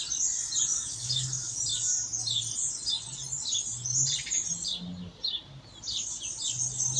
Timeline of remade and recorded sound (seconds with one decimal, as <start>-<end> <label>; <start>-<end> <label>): 0.0-0.7 recorded; 0.7-1.6 remade; 1.6-7.0 recorded